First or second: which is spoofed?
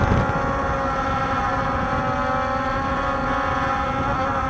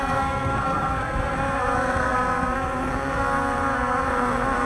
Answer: second